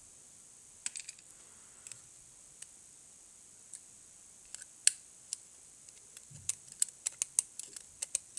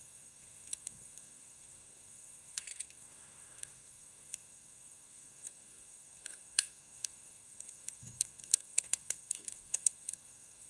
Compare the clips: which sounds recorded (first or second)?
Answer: first